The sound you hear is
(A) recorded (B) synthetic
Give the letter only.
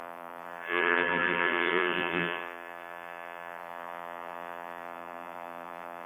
B